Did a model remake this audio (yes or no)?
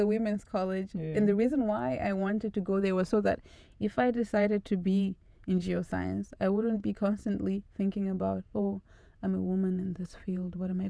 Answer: yes